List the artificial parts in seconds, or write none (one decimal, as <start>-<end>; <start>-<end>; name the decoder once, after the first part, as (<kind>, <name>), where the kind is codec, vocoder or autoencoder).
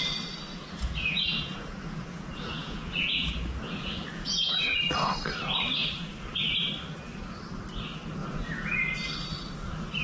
0.5-4.8 (vocoder, Vocos); 8.2-8.8